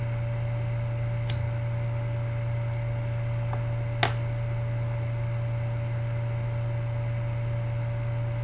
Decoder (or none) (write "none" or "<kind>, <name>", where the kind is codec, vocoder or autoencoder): none